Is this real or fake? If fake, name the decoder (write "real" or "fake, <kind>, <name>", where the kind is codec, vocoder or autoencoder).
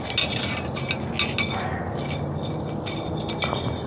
real